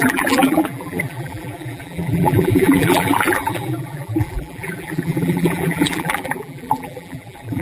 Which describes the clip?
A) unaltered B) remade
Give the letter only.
B